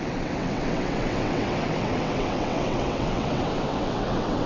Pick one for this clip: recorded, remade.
remade